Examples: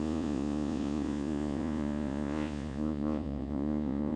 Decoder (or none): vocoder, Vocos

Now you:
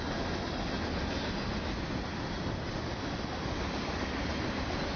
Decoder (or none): none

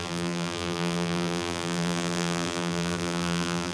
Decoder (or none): vocoder, BigVGAN v2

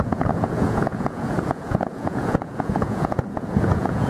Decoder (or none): vocoder, Vocos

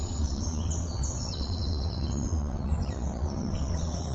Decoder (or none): vocoder, WaveNeXt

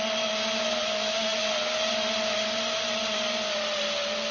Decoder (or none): none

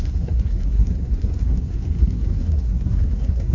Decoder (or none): codec, SNAC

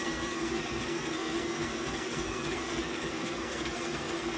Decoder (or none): codec, SNAC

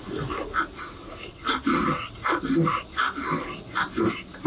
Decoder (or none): none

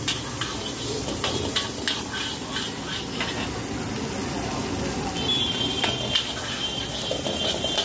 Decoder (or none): none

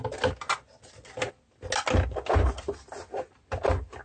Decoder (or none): none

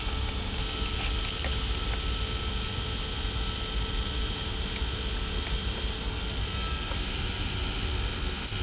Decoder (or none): none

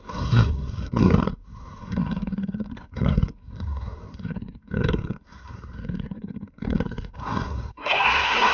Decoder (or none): codec, SNAC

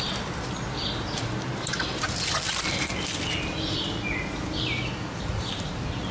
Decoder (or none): none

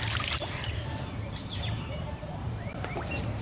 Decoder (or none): vocoder, BigVGAN v2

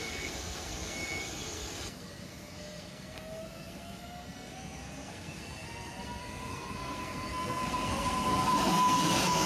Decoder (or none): codec, SNAC